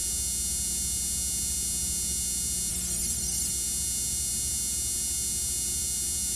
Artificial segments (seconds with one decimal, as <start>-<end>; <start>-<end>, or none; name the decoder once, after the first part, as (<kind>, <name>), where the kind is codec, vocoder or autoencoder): 2.7-3.5 (codec, SNAC)